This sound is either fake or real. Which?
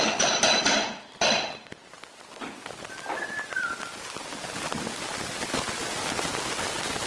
real